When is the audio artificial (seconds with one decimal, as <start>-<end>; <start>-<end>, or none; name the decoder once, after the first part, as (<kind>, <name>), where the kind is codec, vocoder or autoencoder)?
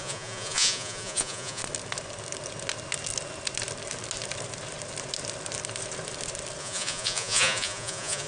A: 0.0-1.6 (vocoder, Vocos); 6.6-8.3